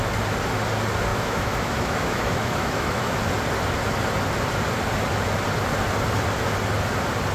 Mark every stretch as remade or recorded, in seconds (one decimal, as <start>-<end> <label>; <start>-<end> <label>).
0.0-1.1 recorded; 1.1-3.2 remade; 3.2-7.3 recorded